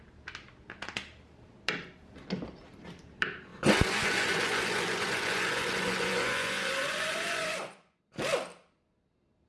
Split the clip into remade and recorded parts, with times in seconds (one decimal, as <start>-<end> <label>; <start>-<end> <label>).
0.0-3.5 recorded; 3.5-8.0 remade; 8.0-9.5 recorded